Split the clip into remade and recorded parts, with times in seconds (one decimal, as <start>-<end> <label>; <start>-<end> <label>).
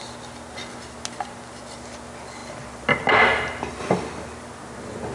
0.0-5.1 recorded